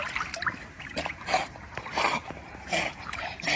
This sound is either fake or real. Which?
fake